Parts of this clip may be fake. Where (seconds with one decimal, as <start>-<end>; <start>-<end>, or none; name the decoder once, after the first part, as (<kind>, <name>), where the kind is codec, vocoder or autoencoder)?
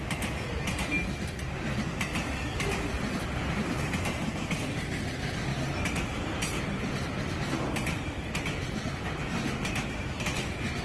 2.1-4.6 (vocoder, BigVGAN v2)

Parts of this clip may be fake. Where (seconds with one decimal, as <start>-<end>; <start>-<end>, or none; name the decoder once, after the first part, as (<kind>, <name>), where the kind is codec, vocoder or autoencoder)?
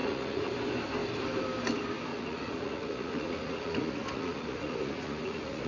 0.0-0.5 (vocoder, Vocos); 2.1-5.7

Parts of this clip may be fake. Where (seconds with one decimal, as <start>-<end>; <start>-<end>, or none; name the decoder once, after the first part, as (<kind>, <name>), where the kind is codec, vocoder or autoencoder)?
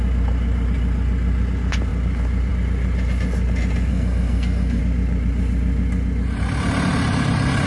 3.9-4.8 (codec, SNAC)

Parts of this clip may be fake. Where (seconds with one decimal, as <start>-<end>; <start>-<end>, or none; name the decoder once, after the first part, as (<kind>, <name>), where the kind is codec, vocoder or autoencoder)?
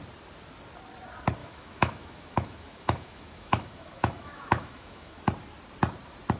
1.4-5.2 (autoencoder, DAC-VAE)